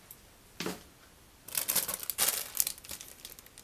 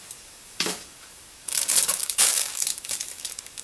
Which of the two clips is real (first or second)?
first